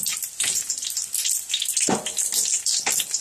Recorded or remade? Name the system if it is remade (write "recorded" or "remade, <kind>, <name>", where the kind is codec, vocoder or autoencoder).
recorded